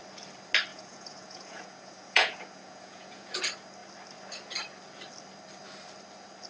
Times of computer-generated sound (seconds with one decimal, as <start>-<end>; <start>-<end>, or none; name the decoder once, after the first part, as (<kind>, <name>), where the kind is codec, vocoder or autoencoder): 0.7-3.4 (vocoder, Vocos)